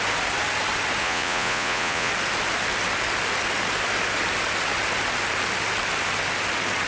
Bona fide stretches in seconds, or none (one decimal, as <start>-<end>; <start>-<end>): 0.0-1.0; 2.1-6.9